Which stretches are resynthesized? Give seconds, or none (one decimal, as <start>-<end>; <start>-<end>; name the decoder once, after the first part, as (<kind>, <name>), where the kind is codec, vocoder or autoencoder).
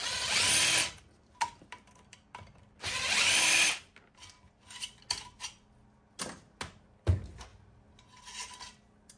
0.0-5.0 (vocoder, BigVGAN v2)